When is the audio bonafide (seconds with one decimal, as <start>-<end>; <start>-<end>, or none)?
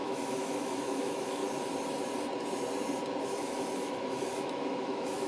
1.4-3.2